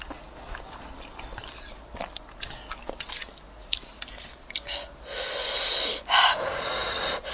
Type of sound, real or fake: real